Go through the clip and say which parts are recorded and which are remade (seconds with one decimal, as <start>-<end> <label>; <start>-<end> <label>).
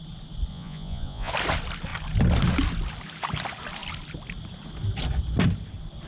0.0-0.5 recorded; 0.5-1.3 remade; 1.3-6.1 recorded